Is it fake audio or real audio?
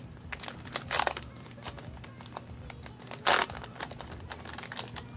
real